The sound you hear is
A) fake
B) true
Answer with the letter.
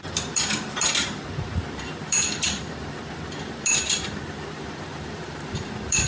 A